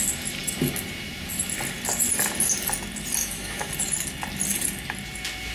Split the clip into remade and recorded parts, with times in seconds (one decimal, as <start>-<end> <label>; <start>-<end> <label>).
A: 0.0-3.2 recorded; 3.2-3.7 remade; 3.7-5.5 recorded